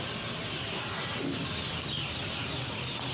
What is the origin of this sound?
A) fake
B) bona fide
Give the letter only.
B